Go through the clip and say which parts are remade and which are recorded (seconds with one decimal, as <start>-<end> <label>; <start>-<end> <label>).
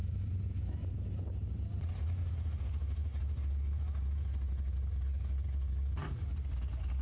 0.0-3.1 remade; 3.1-7.0 recorded